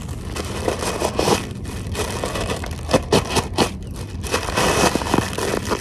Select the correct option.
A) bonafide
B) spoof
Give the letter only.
A